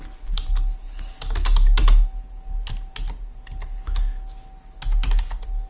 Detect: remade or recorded recorded